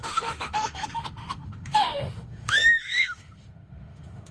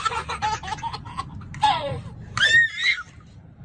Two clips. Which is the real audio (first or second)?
second